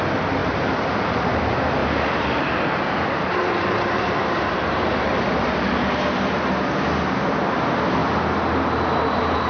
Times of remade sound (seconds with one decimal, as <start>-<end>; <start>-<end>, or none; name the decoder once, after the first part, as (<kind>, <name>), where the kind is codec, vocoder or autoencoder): 0.4-1.4 (vocoder, BigVGAN v2); 1.8-5.3